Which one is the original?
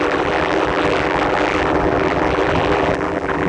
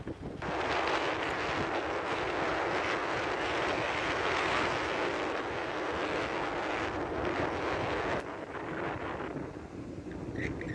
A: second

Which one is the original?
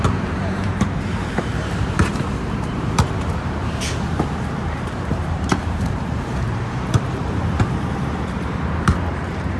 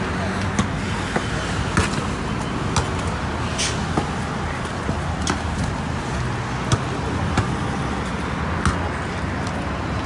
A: second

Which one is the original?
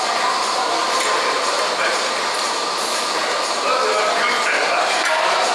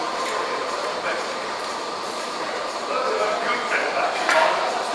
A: first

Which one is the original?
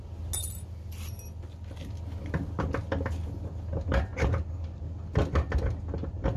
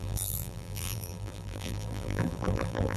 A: first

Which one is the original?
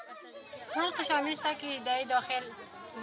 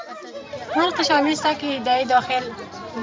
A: first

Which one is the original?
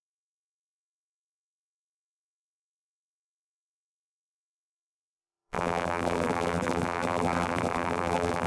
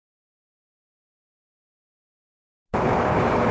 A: second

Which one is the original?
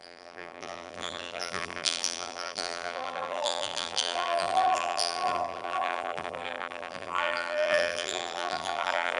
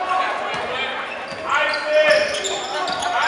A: second